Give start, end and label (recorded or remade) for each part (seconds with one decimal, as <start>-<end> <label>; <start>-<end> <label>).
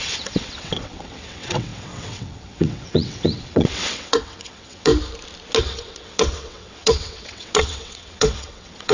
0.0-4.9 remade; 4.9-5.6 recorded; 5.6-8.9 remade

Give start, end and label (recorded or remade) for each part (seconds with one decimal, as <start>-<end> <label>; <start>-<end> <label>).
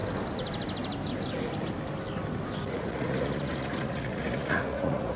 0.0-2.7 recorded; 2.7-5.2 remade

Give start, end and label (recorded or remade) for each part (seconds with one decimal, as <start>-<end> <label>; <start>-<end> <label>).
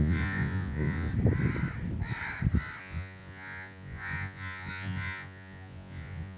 0.0-1.1 remade; 1.1-2.8 recorded; 2.8-6.4 remade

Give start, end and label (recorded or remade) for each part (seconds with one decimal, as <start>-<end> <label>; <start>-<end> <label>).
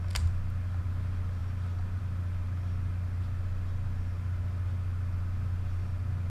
0.0-6.3 recorded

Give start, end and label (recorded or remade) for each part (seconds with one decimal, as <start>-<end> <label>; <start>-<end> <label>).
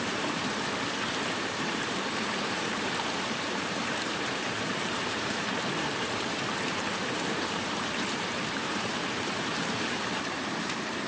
0.0-0.4 remade; 0.4-1.1 recorded; 1.1-11.1 remade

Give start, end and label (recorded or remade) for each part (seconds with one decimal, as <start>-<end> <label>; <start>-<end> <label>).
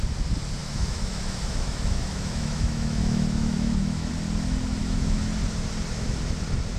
0.0-0.6 recorded; 0.6-4.1 remade; 4.1-4.8 recorded; 4.8-5.3 remade; 5.3-6.8 recorded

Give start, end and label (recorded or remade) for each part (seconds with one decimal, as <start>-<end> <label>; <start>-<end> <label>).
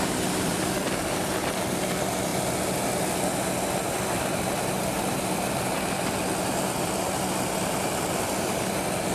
0.0-9.1 recorded